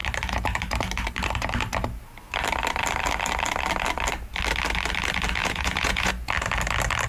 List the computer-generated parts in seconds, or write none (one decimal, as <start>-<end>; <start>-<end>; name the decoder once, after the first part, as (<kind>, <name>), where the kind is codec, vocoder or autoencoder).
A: 5.4-6.1 (vocoder, Vocos)